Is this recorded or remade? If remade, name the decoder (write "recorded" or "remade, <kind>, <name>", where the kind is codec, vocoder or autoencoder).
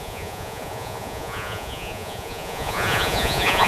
remade, vocoder, Vocos